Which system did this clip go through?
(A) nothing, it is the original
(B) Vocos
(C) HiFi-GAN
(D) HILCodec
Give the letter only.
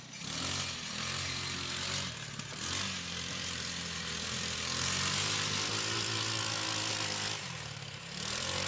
A